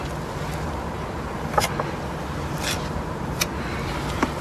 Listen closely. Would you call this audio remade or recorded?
recorded